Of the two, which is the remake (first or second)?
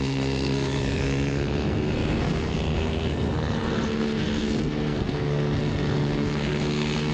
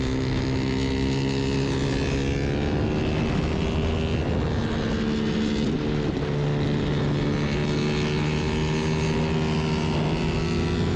first